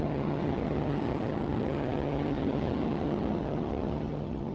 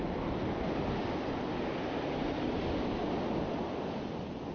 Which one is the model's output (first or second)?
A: first